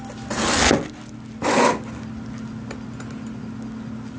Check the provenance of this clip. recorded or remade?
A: recorded